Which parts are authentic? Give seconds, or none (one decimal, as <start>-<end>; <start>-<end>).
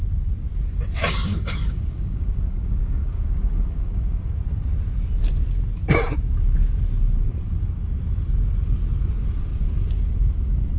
0.0-1.3; 4.4-10.8